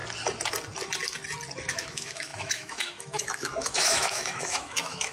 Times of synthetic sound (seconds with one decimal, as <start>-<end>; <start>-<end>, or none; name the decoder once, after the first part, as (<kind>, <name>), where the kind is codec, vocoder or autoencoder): 1.7-5.1 (autoencoder, DAC-VAE)